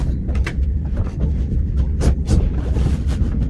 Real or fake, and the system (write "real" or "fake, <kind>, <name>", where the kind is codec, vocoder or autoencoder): fake, vocoder, BigVGAN v2